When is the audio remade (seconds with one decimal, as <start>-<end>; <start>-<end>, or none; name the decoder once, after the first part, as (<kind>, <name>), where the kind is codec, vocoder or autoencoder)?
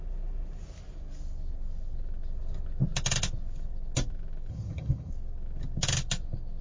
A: 4.5-5.1 (vocoder, HiFi-GAN)